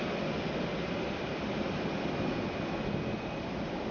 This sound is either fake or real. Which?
real